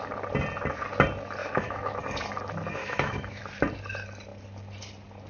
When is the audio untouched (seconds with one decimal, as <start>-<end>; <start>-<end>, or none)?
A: 0.0-1.4; 1.9-2.8; 3.4-5.3